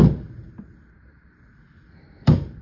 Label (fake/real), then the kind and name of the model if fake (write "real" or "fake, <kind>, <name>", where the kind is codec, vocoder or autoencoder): real